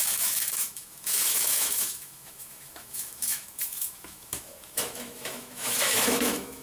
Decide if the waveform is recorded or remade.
remade